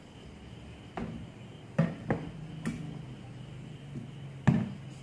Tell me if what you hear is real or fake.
real